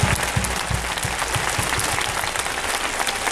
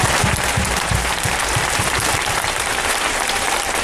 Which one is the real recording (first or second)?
first